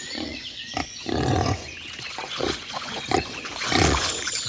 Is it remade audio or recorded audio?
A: remade